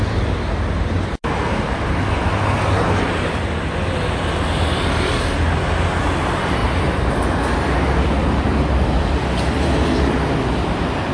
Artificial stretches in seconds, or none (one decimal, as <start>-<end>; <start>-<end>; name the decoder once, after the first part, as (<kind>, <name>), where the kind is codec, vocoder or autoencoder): none